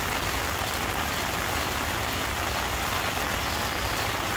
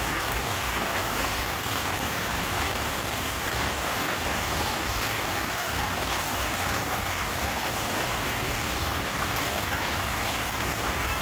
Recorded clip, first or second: first